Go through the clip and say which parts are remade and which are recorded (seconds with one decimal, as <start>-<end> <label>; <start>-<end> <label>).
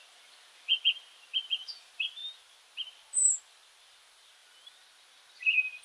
0.0-5.8 recorded